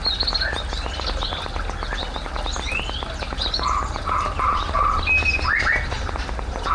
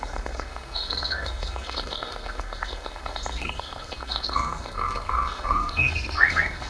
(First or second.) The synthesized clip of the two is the second